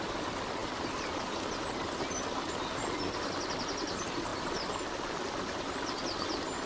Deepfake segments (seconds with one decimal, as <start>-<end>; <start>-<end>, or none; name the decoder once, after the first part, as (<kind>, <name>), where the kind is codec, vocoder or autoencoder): none

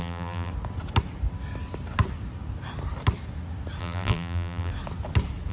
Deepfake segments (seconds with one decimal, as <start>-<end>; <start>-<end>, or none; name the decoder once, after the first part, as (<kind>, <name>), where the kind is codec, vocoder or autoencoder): 0.0-0.5 (vocoder, BigVGAN v2); 3.8-4.7

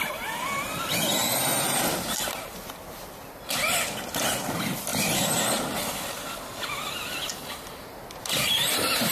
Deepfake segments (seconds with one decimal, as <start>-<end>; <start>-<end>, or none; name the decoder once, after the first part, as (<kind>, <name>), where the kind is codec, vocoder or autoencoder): none

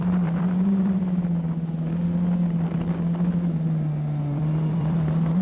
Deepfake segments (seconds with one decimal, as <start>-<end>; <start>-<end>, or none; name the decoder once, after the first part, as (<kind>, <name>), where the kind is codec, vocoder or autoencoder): 0.0-1.0 (vocoder, BigVGAN v2); 4.2-5.4

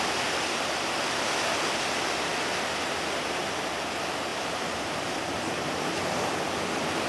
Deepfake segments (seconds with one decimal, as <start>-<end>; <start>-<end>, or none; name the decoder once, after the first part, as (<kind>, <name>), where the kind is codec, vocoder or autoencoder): 4.3-6.4 (vocoder, BigVGAN v2)

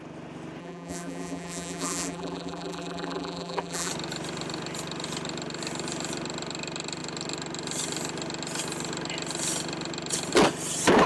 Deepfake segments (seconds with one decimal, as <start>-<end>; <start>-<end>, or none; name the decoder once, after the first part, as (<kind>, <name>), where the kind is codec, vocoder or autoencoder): 0.6-3.9 (vocoder, BigVGAN v2)

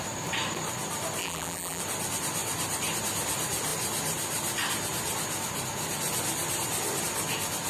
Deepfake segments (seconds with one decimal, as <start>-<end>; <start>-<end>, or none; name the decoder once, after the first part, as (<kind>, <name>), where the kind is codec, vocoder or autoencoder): 1.2-1.8 (vocoder, BigVGAN v2)